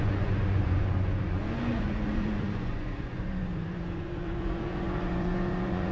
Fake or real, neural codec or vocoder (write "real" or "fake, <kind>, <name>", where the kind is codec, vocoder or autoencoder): fake, vocoder, Vocos